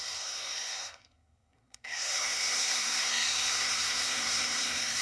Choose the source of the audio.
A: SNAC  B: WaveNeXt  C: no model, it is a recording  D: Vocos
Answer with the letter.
A